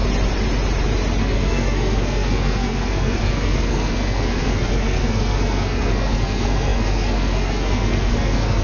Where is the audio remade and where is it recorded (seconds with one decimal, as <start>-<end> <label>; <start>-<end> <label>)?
0.0-1.2 recorded; 1.2-8.6 remade